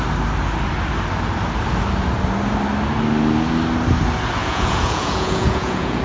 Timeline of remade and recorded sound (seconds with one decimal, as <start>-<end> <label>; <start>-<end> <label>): 0.0-4.4 recorded; 4.4-6.0 remade